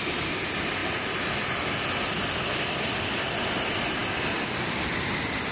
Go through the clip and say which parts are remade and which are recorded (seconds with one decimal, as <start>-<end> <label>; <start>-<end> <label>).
0.0-5.5 recorded